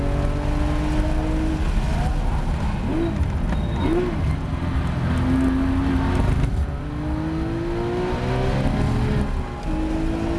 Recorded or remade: recorded